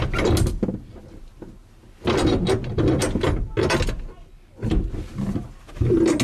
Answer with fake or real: real